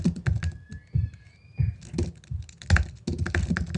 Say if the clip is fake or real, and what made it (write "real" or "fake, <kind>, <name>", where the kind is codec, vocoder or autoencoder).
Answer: real